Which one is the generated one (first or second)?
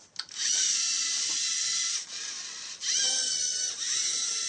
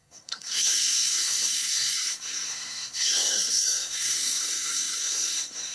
second